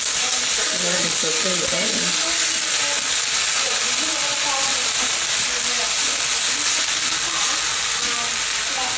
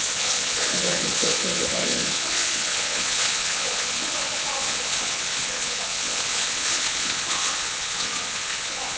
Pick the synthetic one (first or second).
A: second